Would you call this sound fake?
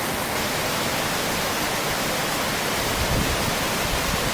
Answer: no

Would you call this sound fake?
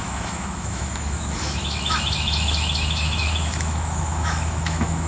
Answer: yes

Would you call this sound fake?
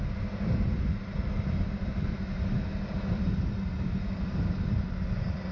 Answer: no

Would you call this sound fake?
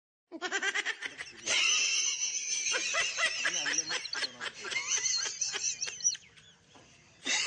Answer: yes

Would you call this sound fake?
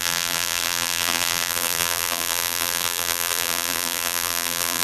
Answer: yes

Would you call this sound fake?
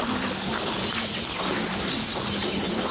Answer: no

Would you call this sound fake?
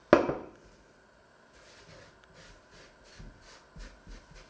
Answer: no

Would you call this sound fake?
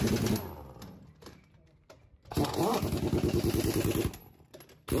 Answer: no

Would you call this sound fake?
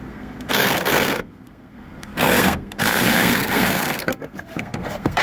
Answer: yes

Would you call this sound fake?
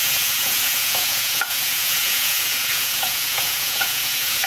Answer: yes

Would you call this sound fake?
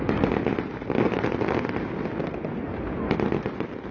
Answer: no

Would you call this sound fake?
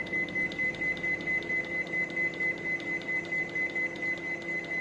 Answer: no